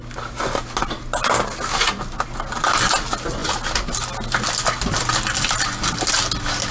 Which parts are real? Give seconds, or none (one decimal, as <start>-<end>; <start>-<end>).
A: 0.0-6.7